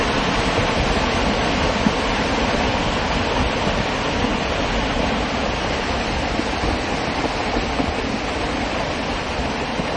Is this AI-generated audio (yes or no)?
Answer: no